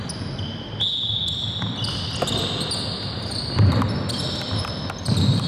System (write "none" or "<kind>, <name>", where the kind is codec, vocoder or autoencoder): none